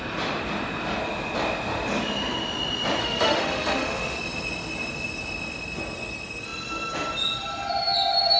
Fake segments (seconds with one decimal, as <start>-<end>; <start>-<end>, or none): 3.0-4.2